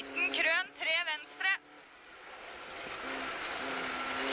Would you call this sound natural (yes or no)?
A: yes